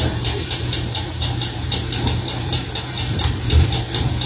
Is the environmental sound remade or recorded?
remade